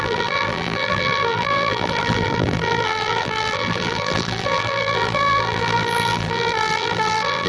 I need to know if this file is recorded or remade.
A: remade